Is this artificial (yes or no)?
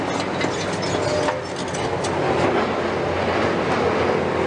no